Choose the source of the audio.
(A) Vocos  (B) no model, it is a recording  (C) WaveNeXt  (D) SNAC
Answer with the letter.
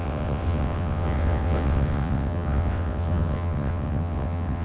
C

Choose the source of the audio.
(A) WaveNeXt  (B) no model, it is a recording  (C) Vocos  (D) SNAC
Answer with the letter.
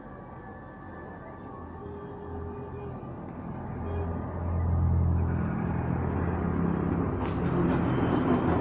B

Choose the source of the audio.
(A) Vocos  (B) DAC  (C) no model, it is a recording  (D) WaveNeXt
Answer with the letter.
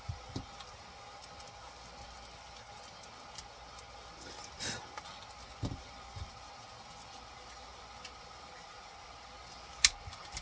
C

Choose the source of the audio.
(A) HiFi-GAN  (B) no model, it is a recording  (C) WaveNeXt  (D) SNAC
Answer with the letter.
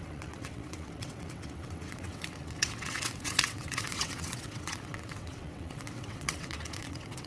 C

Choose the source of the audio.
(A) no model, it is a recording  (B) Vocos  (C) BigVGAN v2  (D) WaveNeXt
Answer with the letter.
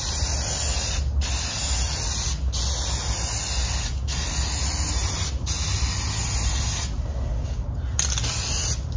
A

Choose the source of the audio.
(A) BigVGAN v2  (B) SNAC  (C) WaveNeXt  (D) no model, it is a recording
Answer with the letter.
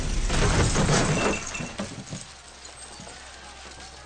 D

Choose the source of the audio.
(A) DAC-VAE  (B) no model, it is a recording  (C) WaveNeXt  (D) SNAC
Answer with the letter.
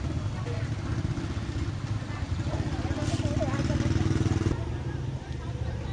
B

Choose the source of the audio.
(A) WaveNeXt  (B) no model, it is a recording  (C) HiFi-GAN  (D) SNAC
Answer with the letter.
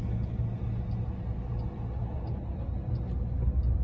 B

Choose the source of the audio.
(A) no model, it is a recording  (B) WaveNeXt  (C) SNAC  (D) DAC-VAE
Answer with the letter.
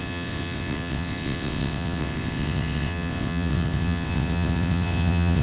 B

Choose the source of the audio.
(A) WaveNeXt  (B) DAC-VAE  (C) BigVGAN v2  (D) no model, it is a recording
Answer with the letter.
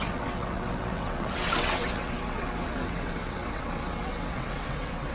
A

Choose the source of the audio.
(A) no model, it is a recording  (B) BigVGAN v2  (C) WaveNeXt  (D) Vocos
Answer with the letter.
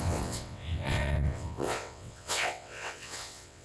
C